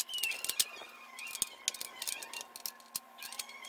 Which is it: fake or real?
real